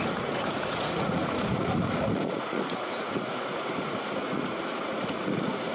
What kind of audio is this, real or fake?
fake